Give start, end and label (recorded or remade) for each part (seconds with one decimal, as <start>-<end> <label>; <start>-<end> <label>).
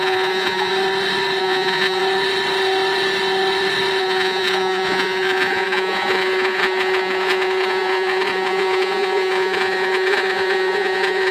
0.0-0.7 remade; 0.7-1.4 recorded; 1.4-2.0 remade; 2.0-4.0 recorded; 4.0-11.3 remade